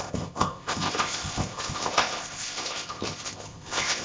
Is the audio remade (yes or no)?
yes